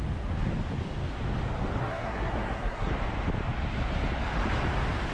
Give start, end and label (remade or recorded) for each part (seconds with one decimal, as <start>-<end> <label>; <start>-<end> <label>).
0.0-1.8 recorded; 1.8-2.9 remade; 2.9-5.1 recorded